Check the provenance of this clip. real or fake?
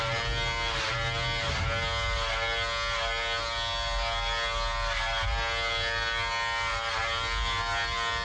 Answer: real